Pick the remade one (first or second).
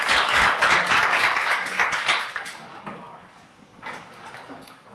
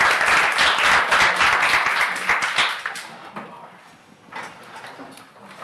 first